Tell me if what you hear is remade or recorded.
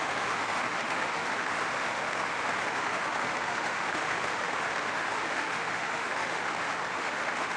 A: remade